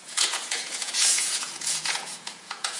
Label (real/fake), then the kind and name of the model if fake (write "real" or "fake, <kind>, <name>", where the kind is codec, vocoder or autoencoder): fake, vocoder, Vocos